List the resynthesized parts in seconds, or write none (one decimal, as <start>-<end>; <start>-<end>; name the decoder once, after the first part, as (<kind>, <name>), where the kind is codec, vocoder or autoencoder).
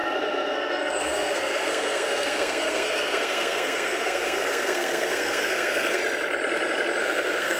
0.0-6.0 (codec, SNAC); 7.0-7.6